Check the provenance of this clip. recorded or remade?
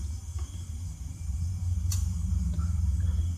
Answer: remade